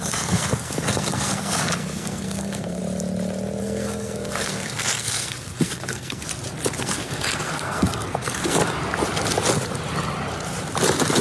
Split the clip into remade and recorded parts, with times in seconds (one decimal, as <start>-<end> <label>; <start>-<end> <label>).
0.0-2.8 remade; 2.8-3.6 recorded; 3.6-6.3 remade; 6.3-6.8 recorded; 6.8-8.6 remade; 8.6-11.2 recorded